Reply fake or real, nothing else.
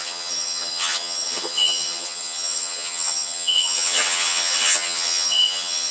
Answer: fake